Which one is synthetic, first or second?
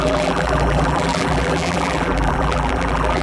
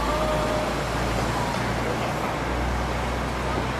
first